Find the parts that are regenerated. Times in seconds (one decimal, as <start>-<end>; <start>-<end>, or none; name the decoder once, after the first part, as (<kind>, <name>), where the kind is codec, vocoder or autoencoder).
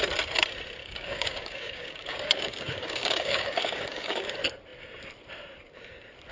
0.8-4.3 (codec, DAC)